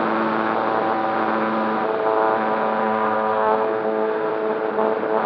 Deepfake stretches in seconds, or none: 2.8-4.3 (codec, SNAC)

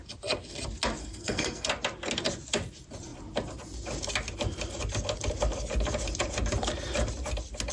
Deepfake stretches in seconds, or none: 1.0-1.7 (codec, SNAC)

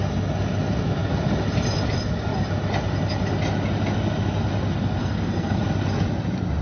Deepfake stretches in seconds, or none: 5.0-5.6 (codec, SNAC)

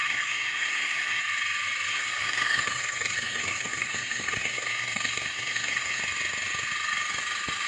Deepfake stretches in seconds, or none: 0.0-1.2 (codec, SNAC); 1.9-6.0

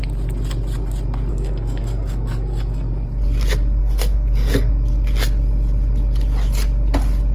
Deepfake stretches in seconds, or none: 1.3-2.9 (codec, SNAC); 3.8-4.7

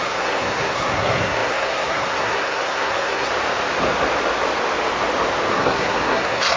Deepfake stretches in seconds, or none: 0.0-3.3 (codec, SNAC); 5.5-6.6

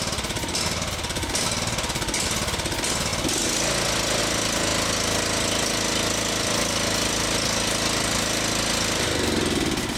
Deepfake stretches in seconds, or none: none